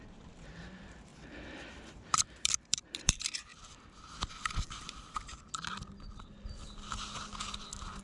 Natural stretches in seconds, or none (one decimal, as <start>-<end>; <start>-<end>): 1.1-1.9; 3.5-8.0